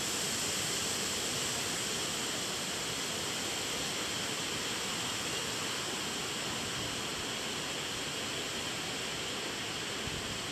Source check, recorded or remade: recorded